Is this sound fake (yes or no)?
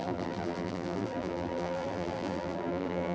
yes